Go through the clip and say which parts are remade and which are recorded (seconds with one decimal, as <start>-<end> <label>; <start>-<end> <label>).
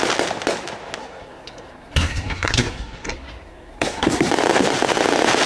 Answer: 0.0-1.0 recorded; 1.0-4.3 remade; 4.3-5.5 recorded